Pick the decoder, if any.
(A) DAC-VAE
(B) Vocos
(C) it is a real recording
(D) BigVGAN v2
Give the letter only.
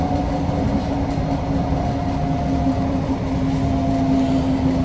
C